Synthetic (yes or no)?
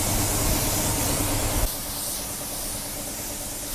no